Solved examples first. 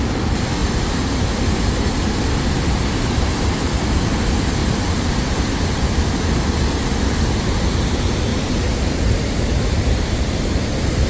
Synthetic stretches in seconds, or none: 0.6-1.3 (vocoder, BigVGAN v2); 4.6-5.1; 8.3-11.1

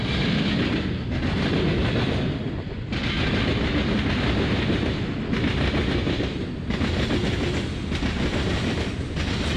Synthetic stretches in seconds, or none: 6.0-6.9 (vocoder, BigVGAN v2)

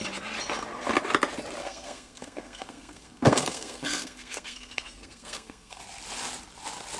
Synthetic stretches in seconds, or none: 1.6-5.8 (codec, SNAC)

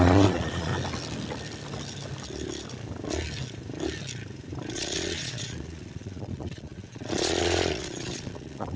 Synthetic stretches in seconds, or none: 0.0-0.7 (vocoder, Vocos); 4.7-8.8